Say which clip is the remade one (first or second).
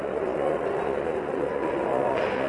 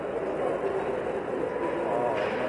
first